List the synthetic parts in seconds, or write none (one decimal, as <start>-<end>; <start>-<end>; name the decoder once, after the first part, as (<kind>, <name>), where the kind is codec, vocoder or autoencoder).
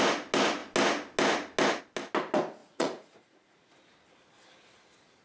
2.6-3.7 (vocoder, Vocos)